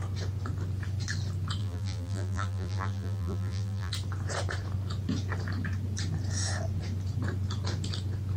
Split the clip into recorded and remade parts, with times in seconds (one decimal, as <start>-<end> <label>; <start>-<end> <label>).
0.0-1.6 recorded; 1.6-3.9 remade; 3.9-8.4 recorded